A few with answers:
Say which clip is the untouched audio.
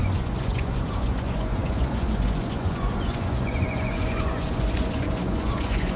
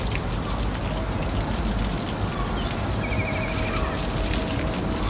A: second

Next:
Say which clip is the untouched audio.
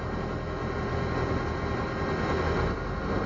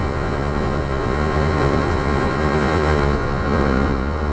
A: first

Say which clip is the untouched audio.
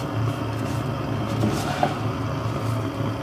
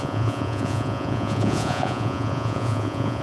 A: first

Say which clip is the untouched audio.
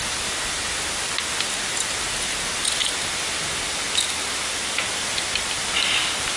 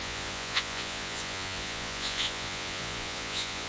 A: first